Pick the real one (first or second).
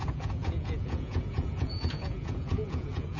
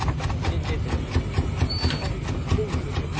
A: second